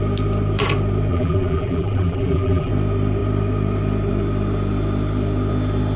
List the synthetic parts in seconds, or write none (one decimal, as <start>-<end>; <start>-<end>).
1.1-2.7